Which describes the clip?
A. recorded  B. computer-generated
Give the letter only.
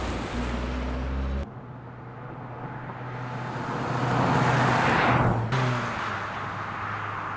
A